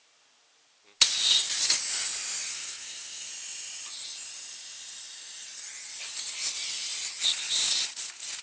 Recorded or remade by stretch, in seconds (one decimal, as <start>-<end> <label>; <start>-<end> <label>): 0.0-2.5 recorded; 2.5-3.3 remade; 3.3-8.4 recorded